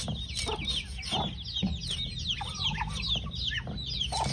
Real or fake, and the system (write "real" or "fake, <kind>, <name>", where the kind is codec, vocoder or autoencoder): real